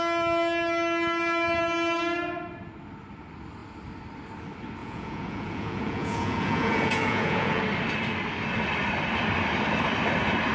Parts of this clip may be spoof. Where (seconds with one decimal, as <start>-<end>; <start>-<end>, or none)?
4.8-7.6